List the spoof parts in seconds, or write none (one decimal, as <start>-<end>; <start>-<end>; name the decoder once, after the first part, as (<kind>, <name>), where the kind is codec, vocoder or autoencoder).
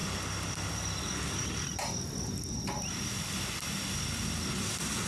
none